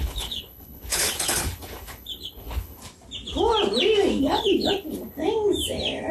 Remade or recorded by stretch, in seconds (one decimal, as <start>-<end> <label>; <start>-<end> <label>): 0.0-2.8 remade; 2.8-4.2 recorded; 4.2-5.2 remade; 5.2-6.1 recorded